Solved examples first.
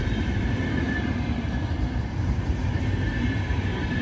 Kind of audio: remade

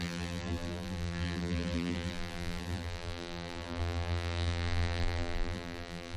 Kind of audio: remade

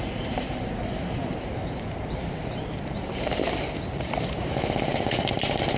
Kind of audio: remade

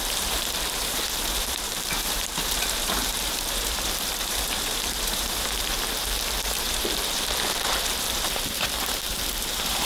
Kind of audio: remade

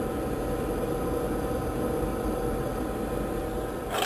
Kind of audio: recorded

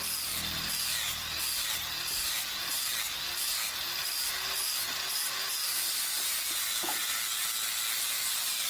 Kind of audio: recorded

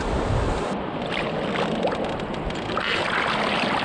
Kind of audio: recorded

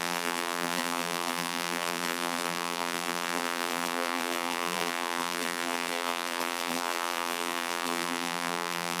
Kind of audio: remade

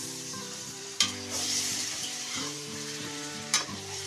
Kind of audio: remade